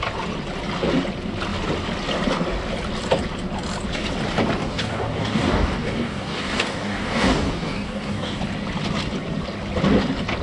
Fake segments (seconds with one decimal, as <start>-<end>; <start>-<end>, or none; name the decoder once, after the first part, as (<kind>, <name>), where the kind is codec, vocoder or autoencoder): 4.6-8.4 (codec, DAC)